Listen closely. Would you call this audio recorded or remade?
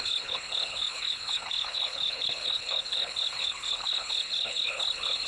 remade